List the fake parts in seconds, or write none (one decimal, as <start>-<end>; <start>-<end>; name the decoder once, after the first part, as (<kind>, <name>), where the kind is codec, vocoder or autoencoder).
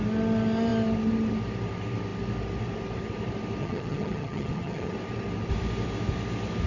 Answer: 3.6-4.9 (vocoder, HiFi-GAN)